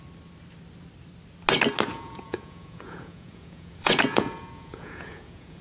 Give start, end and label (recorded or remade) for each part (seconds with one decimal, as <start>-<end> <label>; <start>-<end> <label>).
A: 0.0-1.9 recorded; 1.9-5.6 remade